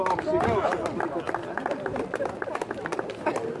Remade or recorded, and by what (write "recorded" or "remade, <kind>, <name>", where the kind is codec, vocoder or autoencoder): recorded